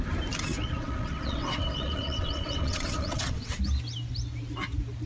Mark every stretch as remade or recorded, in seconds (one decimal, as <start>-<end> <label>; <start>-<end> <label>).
0.0-0.5 recorded; 0.5-3.6 remade; 3.6-5.1 recorded